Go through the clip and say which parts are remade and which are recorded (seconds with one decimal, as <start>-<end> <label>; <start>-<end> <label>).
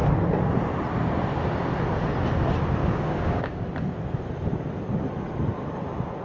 0.0-2.8 recorded; 2.8-3.7 remade; 3.7-6.2 recorded